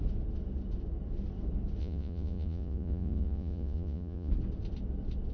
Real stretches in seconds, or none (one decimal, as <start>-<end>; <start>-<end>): 0.0-1.8; 4.3-5.3